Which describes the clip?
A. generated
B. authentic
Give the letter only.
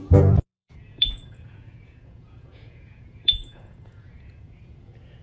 A